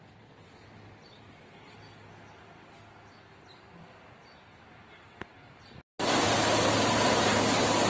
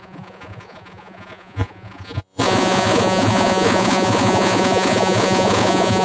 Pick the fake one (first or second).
second